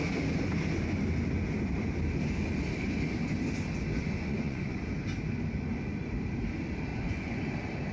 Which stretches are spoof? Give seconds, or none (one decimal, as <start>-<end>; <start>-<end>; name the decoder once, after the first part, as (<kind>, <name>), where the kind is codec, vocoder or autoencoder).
4.0-4.8 (vocoder, Vocos); 6.9-7.4